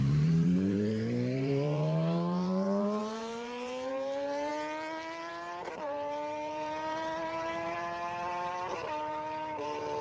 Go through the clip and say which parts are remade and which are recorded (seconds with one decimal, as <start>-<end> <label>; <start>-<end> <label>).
0.0-4.5 remade; 4.5-5.3 recorded; 5.3-10.0 remade

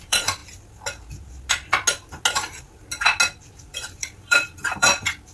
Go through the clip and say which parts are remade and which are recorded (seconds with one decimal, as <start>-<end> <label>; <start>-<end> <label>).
0.0-0.4 remade; 0.4-3.6 recorded; 3.6-5.3 remade

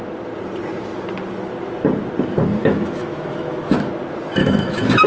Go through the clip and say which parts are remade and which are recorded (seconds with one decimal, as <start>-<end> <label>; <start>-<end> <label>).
0.0-2.6 recorded; 2.6-3.9 remade; 3.9-4.4 recorded; 4.4-5.1 remade

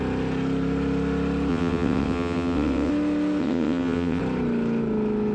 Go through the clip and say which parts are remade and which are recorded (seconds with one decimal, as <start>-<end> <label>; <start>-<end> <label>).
0.0-1.5 recorded; 1.5-2.9 remade; 2.9-3.4 recorded; 3.4-4.2 remade; 4.2-5.3 recorded